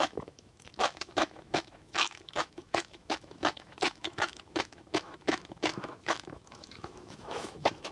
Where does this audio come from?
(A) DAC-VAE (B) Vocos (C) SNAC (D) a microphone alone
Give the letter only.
A